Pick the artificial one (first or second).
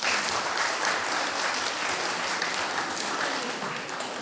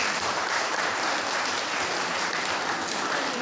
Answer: second